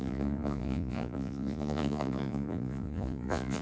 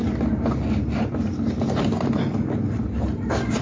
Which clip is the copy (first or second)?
first